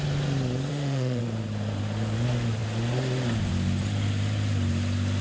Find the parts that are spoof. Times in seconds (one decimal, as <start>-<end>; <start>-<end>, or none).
0.7-1.2